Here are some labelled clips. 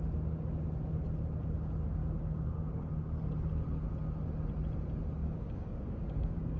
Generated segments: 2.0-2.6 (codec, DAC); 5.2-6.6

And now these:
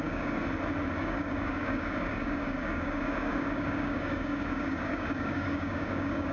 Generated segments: 0.0-0.4 (codec, DAC); 1.0-6.3

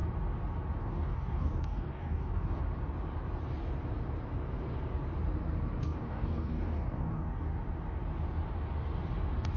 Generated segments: 0.8-2.6 (codec, DAC); 5.8-7.5

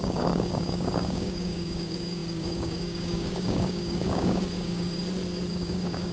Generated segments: 0.0-5.0 (codec, DAC); 5.5-6.1

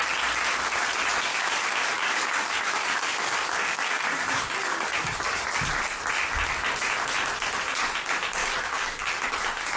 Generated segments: 1.3-5.4 (codec, DAC); 8.4-9.4

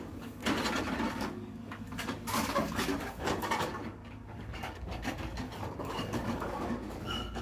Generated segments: 0.0-0.4 (codec, DAC); 1.1-7.4